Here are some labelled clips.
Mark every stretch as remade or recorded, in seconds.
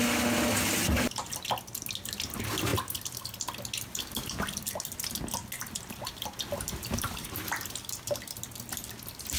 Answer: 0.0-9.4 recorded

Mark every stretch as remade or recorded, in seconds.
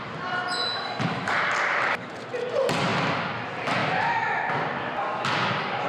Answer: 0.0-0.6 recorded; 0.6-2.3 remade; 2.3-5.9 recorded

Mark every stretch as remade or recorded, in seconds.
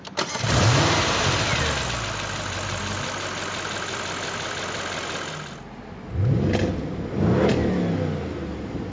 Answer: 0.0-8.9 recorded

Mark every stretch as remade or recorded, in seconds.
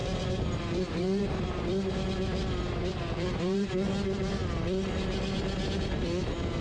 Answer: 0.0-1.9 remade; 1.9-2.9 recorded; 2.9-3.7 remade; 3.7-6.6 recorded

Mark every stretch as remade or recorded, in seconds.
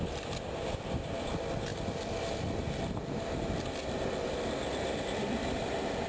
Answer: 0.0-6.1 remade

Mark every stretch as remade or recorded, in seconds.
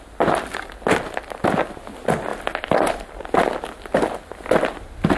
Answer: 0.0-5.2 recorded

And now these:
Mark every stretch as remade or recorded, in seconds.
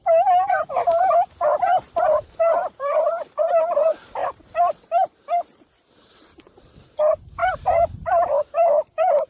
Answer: 0.0-0.7 recorded; 0.7-9.3 remade